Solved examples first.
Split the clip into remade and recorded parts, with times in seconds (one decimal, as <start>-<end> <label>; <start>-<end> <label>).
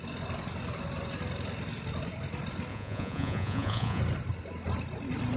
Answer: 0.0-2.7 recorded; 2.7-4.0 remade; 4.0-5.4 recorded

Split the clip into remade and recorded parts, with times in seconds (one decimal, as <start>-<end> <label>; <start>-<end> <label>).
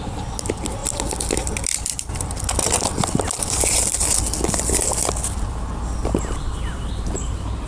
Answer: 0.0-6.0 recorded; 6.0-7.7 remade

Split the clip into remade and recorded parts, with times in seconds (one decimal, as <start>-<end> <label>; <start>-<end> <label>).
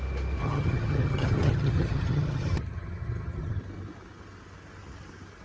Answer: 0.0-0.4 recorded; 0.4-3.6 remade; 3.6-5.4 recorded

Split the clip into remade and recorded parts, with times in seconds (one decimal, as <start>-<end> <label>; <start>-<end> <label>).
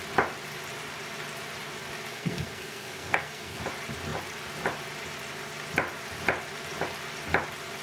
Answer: 0.0-2.1 recorded; 2.1-3.6 remade; 3.6-7.8 recorded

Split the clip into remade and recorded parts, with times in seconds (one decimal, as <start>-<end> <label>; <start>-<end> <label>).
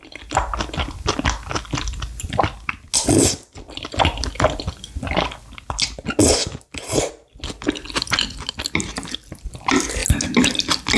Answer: 0.0-6.4 recorded; 6.4-7.1 remade; 7.1-11.0 recorded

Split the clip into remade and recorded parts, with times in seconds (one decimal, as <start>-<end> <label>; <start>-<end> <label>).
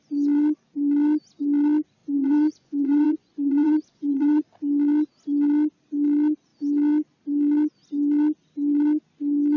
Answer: 0.0-2.0 recorded; 2.0-4.4 remade; 4.4-9.6 recorded